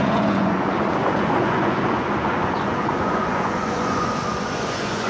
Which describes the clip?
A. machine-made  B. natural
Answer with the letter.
A